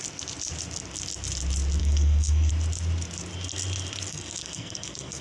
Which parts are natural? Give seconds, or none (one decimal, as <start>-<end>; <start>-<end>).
0.0-1.8; 2.5-4.1